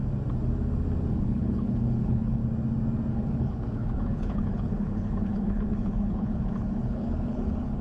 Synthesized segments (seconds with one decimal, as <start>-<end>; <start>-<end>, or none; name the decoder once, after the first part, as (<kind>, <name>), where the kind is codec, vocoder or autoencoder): 1.1-2.4 (codec, HILCodec); 3.1-7.8